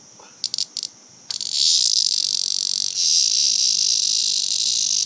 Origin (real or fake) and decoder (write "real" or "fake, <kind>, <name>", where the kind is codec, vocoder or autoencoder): real